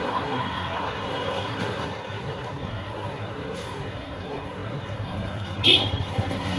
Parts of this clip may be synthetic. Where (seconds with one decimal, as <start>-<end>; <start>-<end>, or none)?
0.0-6.6